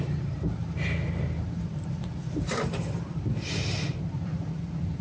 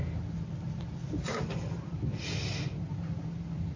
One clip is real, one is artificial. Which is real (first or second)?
second